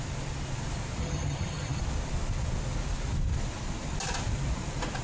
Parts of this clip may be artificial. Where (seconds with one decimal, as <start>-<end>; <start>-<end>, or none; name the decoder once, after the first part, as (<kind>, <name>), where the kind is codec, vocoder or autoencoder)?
1.0-1.8 (vocoder, HiFi-GAN)